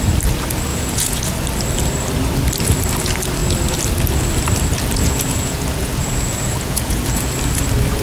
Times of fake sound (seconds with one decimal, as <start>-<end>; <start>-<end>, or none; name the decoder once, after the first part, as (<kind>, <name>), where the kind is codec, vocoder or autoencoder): 0.7-1.2 (vocoder, Vocos); 5.0-7.2